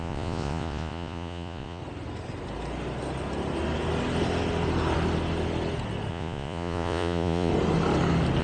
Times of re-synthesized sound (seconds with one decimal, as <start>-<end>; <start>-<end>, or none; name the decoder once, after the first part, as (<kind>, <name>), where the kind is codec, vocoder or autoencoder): 0.0-1.8 (vocoder, Vocos); 6.1-7.5